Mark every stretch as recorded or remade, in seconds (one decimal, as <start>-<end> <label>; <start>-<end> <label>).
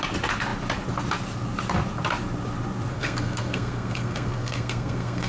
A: 0.0-2.9 recorded; 2.9-5.3 remade